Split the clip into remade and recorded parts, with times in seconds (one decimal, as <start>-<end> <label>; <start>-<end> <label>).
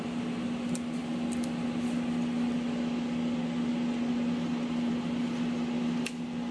0.0-6.5 recorded